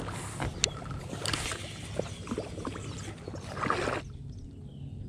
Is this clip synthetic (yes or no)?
no